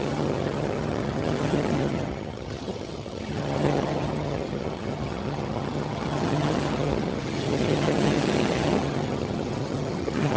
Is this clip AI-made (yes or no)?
yes